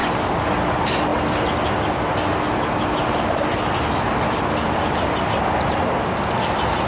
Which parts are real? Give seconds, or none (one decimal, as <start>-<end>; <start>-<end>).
0.5-6.9